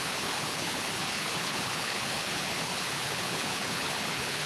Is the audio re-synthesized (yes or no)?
yes